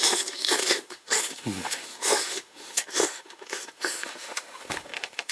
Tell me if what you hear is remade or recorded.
remade